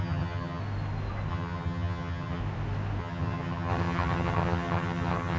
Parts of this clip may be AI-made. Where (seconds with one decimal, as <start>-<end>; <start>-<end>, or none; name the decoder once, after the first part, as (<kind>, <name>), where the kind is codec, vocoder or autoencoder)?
0.0-0.6 (vocoder, HiFi-GAN); 1.3-2.4; 3.0-5.4